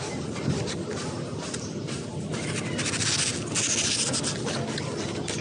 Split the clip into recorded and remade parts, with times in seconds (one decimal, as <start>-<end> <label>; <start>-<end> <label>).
0.0-5.4 recorded